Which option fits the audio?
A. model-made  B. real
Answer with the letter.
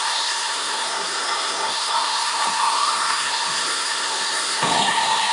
A